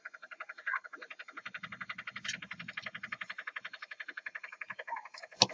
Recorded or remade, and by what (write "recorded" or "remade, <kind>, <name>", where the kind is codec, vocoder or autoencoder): recorded